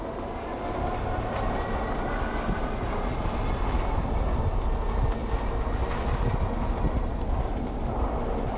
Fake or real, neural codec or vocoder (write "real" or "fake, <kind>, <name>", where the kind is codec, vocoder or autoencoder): real